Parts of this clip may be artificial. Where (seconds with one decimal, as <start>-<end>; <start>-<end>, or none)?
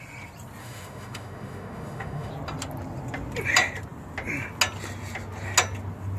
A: 0.6-2.3